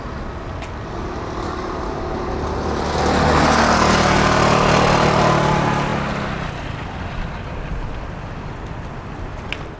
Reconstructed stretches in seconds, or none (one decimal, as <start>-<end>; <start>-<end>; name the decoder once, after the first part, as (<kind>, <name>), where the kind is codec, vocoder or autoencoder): none